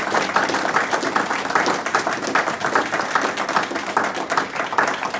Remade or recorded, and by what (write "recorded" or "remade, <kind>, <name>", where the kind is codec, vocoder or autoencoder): recorded